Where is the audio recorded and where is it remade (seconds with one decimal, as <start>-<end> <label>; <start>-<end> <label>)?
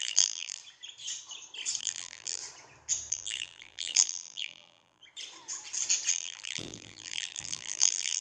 0.0-0.6 remade; 0.6-1.8 recorded; 1.8-2.4 remade; 2.4-3.1 recorded; 3.1-5.0 remade; 5.0-6.1 recorded; 6.1-8.2 remade